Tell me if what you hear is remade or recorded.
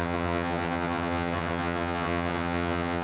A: remade